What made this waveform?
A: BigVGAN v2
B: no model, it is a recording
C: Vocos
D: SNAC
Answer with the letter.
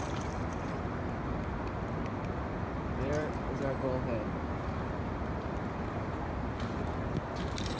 A